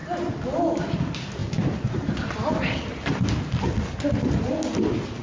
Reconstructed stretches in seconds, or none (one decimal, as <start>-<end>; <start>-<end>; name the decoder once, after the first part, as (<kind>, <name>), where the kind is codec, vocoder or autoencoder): none